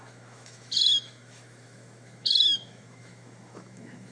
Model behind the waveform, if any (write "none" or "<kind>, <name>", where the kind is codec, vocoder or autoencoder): autoencoder, DAC-VAE